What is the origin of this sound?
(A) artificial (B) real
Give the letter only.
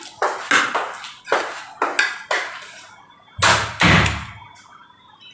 B